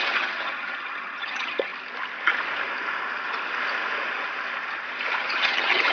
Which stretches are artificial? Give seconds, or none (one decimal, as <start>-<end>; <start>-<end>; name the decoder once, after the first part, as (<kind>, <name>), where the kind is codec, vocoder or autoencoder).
0.0-1.7 (vocoder, HiFi-GAN); 5.2-5.9